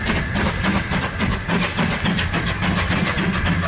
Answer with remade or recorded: recorded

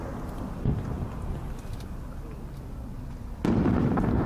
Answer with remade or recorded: recorded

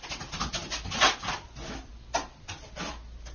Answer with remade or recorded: recorded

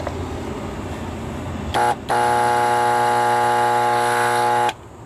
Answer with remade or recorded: recorded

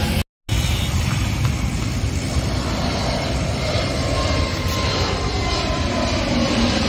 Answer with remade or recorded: recorded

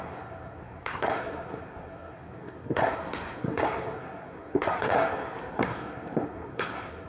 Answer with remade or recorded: remade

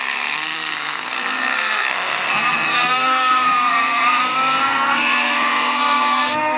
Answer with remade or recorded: remade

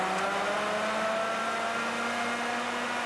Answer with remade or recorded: recorded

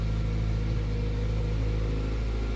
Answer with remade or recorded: recorded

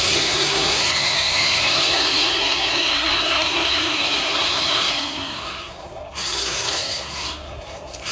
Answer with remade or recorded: remade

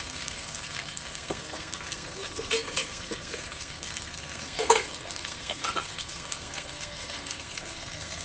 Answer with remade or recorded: remade